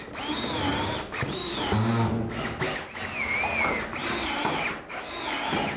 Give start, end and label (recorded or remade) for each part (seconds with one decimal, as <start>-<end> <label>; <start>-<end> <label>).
0.0-0.7 recorded; 0.7-1.6 remade; 1.6-4.0 recorded; 4.0-5.0 remade; 5.0-5.8 recorded